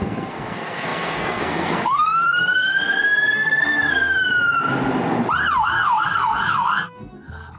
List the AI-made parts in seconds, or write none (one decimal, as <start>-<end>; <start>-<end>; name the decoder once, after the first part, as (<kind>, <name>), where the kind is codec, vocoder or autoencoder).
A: 0.0-4.2 (codec, SNAC); 5.6-7.6